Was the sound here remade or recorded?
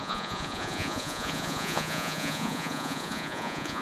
remade